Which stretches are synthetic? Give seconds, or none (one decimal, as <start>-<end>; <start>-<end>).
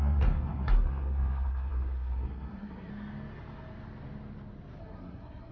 0.0-2.9; 4.8-5.5